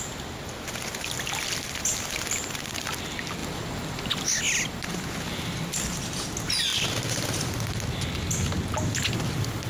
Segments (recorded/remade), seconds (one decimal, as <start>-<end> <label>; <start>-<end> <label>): 0.0-9.7 recorded